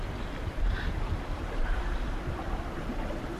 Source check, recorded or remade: remade